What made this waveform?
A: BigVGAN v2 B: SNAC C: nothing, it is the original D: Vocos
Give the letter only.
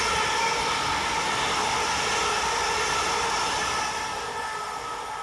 C